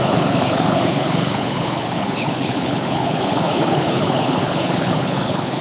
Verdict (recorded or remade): remade